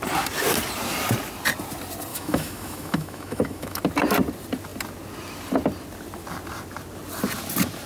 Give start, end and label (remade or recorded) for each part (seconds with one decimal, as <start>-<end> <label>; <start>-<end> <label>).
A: 0.0-2.1 recorded; 2.1-3.8 remade; 3.8-7.9 recorded